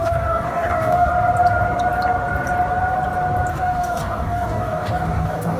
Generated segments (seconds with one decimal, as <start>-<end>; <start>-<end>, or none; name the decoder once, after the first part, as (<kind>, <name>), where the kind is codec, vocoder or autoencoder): 0.0-1.1 (codec, DAC); 3.5-5.6